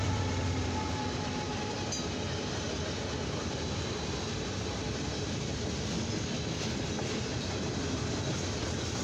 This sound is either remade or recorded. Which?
recorded